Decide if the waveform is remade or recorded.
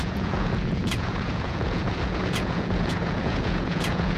remade